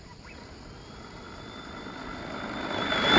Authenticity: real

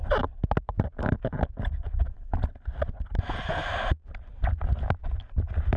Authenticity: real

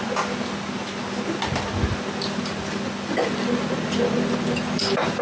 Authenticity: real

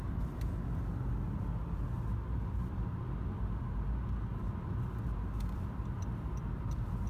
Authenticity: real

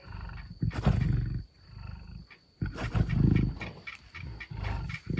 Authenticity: real